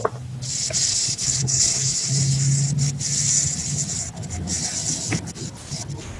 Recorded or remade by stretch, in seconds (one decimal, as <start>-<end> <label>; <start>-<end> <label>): 0.0-0.9 recorded; 0.9-2.2 remade; 2.2-6.2 recorded